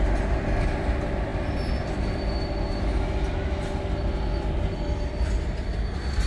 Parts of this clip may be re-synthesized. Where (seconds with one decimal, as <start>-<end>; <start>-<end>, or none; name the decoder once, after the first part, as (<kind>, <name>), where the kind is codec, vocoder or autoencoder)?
none